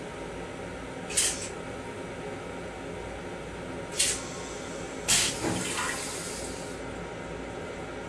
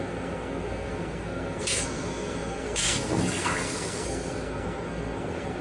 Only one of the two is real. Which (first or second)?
first